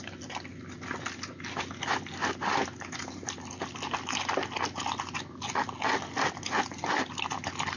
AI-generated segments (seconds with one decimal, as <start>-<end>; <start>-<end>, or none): none